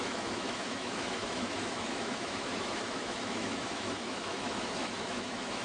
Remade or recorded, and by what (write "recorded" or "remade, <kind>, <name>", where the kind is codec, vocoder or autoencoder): remade, autoencoder, DAC-VAE